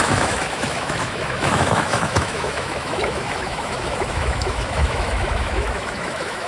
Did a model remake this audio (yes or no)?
yes